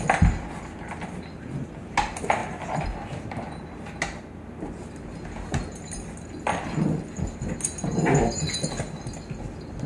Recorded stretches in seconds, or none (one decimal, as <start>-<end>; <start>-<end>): 0.0-9.9